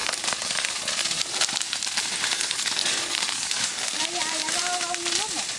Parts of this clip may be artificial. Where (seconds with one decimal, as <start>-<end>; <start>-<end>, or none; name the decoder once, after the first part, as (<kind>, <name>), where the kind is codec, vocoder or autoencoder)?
0.0-0.7 (codec, DAC); 2.3-4.0